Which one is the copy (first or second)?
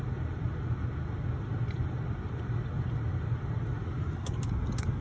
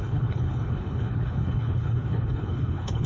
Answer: second